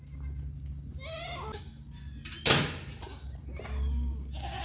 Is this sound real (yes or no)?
yes